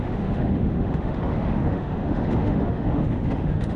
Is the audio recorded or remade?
remade